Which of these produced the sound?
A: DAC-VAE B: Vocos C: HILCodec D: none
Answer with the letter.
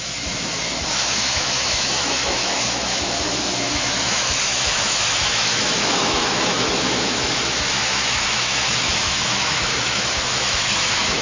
A